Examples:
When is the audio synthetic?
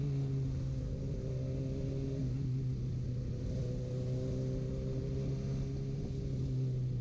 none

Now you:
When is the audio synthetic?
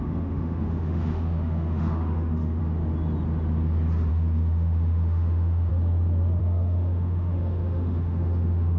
0.0-2.6; 4.1-5.7; 6.4-8.8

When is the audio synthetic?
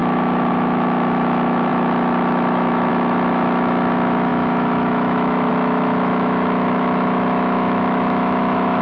0.0-8.8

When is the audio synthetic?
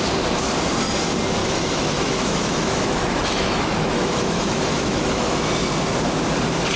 1.4-5.5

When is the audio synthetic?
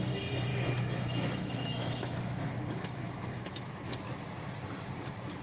0.5-3.7